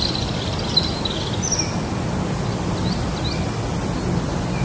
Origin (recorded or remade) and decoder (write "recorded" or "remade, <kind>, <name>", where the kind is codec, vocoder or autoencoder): recorded